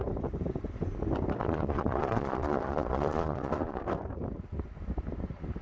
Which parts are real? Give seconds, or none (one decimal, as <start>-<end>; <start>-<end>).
0.0-1.4; 3.8-5.6